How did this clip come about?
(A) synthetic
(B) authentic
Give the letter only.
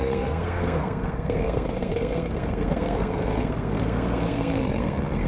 A